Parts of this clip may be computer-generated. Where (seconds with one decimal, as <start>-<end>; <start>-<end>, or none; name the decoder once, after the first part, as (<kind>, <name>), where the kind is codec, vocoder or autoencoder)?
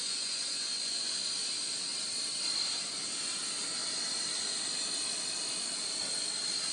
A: 0.0-1.3 (vocoder, Vocos)